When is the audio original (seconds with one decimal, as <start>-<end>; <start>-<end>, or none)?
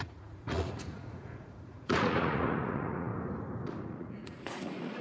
3.1-3.8